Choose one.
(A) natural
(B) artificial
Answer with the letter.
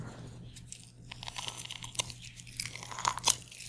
A